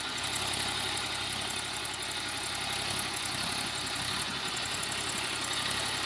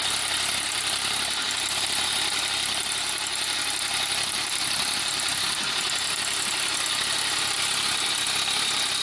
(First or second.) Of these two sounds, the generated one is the first